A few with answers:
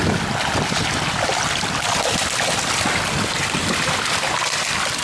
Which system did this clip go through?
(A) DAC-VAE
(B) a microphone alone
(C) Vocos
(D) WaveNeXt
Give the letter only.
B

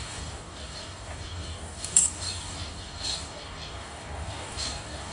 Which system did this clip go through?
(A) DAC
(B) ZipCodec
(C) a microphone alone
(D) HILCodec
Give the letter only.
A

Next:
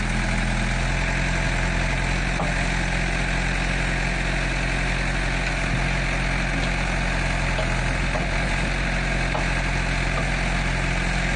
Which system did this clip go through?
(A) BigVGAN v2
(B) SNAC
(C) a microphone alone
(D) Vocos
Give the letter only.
C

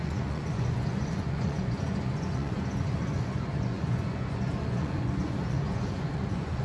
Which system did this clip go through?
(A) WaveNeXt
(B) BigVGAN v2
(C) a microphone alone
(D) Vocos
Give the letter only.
D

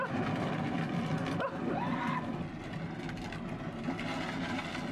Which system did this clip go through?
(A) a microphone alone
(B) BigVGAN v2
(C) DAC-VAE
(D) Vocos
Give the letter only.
A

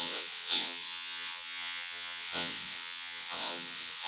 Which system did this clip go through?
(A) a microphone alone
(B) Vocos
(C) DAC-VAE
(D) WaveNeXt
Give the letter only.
D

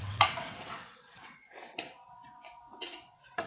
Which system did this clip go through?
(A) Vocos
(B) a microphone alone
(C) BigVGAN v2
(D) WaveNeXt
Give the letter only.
D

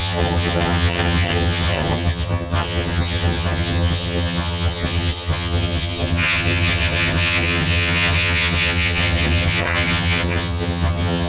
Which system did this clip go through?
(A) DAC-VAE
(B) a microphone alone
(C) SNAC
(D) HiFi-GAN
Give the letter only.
D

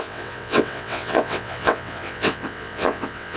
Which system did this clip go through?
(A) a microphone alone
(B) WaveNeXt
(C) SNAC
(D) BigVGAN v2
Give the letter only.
B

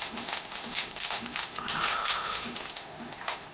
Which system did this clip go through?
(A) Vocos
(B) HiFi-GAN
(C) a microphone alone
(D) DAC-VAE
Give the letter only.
D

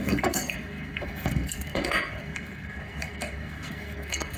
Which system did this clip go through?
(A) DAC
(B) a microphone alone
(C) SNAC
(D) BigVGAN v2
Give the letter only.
C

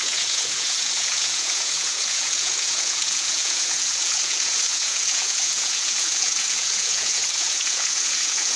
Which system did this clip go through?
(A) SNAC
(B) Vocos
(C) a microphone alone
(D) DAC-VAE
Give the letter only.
B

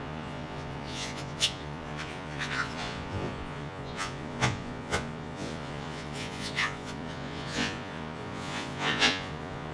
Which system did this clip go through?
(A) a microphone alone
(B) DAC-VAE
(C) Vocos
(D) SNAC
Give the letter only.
C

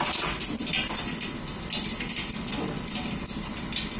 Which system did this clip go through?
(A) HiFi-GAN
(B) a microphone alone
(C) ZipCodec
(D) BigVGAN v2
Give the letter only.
B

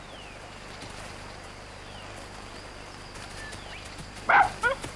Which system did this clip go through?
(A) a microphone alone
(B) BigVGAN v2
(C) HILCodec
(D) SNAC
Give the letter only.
B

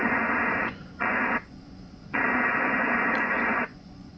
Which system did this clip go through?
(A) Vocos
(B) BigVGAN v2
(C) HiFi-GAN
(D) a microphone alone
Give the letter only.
A